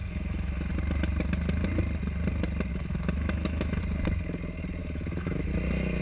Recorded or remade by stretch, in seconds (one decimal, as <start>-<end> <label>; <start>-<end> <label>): 0.0-0.7 remade; 0.7-2.7 recorded; 2.7-3.8 remade; 3.8-4.8 recorded; 4.8-5.5 remade; 5.5-6.0 recorded